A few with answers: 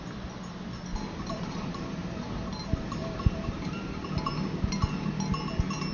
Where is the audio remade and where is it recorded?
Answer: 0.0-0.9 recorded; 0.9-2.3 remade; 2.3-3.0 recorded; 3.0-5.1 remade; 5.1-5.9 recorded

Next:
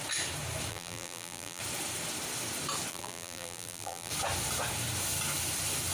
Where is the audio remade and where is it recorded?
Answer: 0.0-0.7 recorded; 0.7-1.6 remade; 1.6-2.9 recorded; 2.9-4.1 remade; 4.1-5.9 recorded